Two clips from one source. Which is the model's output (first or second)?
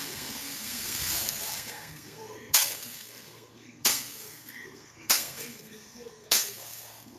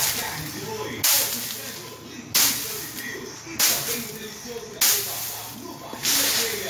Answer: first